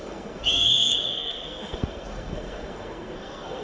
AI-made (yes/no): yes